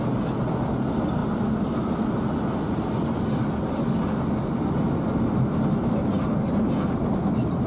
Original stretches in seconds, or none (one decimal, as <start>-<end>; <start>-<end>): 0.0-7.7